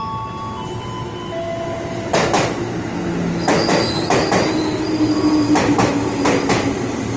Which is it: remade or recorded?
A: recorded